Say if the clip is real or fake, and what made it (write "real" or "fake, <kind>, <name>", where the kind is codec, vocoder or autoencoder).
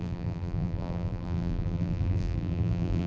fake, vocoder, BigVGAN v2